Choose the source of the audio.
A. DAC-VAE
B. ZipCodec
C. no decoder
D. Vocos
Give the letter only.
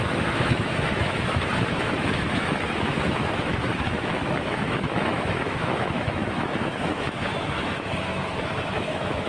A